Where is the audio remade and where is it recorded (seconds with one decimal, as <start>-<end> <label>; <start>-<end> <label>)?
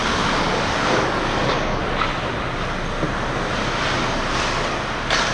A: 0.0-1.8 remade; 1.8-5.3 recorded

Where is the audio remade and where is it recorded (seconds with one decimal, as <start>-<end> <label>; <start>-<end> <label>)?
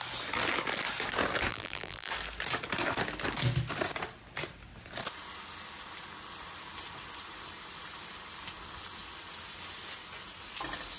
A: 0.0-1.5 recorded; 1.5-2.1 remade; 2.1-11.0 recorded